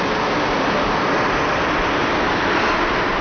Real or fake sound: real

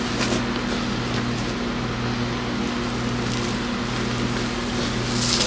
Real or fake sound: real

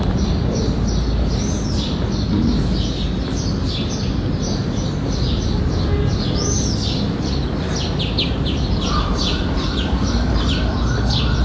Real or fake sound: real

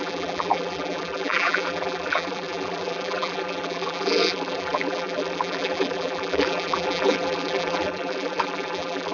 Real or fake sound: fake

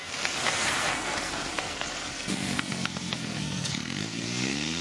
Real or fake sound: fake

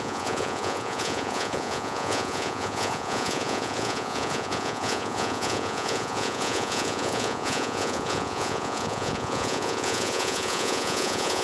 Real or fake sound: fake